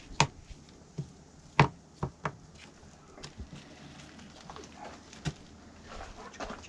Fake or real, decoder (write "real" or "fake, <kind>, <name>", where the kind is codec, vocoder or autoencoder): real